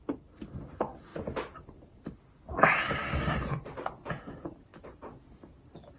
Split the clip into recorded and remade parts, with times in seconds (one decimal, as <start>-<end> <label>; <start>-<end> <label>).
0.0-6.0 recorded